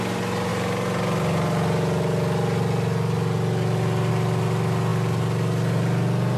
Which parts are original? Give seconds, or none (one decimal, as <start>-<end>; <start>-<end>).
0.0-6.4